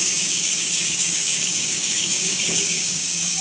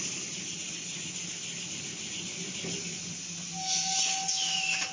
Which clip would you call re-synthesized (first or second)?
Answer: first